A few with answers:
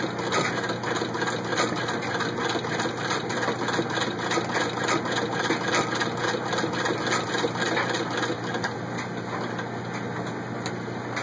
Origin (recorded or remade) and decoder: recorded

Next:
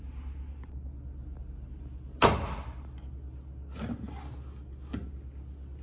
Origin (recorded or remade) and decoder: recorded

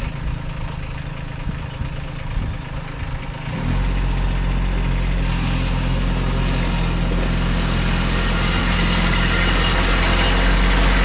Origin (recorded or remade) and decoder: recorded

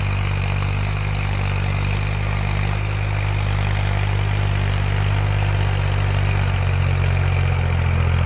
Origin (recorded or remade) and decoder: recorded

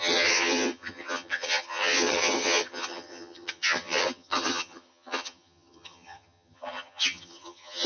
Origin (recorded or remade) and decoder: remade, vocoder, HiFi-GAN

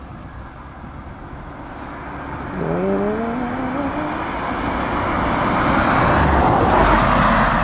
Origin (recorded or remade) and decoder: recorded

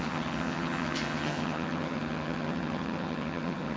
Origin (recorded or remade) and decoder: remade, vocoder, HiFi-GAN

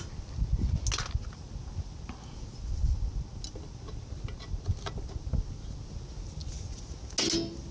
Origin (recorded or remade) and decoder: recorded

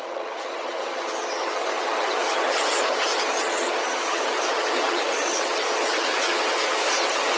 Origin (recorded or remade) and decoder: remade, vocoder, HiFi-GAN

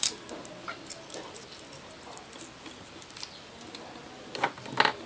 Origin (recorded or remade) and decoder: recorded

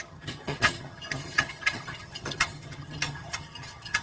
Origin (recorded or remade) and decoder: remade, vocoder, HiFi-GAN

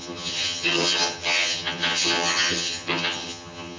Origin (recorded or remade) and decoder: remade, vocoder, HiFi-GAN